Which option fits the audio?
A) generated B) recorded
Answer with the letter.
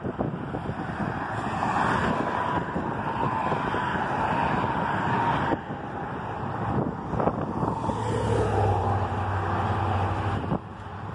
B